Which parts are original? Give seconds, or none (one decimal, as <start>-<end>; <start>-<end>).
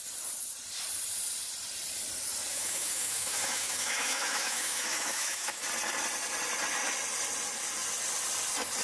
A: 0.0-2.5; 5.6-8.8